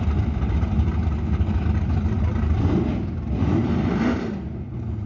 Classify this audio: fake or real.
real